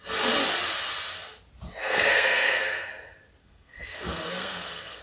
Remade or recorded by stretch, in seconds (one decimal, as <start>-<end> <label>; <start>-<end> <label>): 0.0-1.8 recorded; 1.8-2.9 remade; 2.9-3.4 recorded; 3.4-5.0 remade